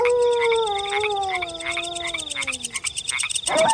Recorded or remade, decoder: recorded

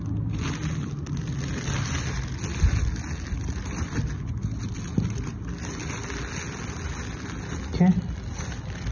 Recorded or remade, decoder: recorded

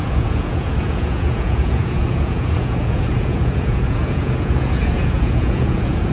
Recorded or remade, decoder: remade, vocoder, Vocos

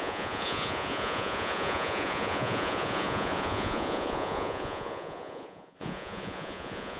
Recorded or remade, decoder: remade, vocoder, Vocos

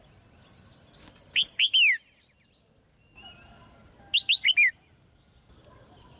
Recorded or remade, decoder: recorded